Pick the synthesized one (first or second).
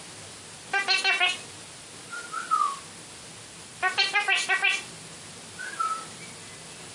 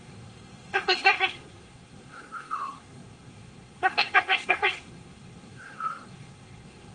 second